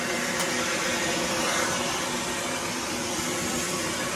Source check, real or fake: fake